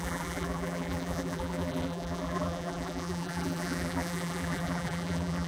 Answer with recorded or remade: remade